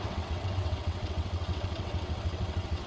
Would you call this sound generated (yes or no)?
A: yes